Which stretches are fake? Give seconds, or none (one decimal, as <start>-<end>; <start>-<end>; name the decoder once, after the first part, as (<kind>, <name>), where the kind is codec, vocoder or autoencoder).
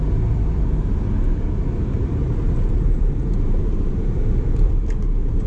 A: 2.4-5.5 (vocoder, BigVGAN v2)